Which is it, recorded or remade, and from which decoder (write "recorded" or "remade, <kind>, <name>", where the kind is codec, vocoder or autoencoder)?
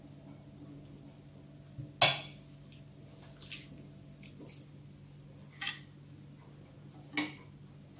recorded